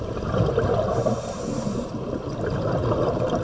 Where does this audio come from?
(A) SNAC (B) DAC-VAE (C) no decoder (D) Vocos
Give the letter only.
C